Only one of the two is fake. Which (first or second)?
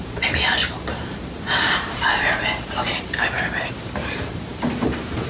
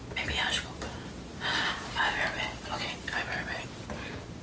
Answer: first